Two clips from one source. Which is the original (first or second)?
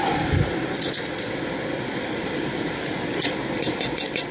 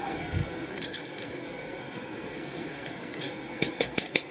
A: first